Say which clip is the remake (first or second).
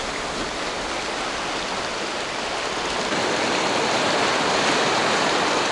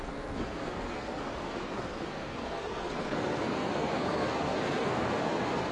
second